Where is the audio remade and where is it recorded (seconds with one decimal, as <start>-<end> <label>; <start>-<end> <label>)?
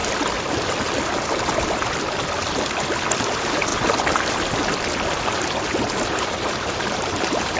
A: 0.0-3.2 recorded; 3.2-3.7 remade; 3.7-5.9 recorded; 5.9-7.6 remade